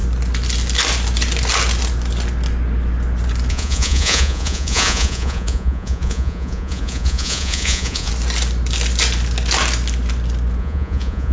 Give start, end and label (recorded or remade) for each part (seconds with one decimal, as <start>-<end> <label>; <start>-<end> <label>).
0.0-3.5 recorded; 3.5-8.1 remade; 8.1-10.6 recorded; 10.6-11.3 remade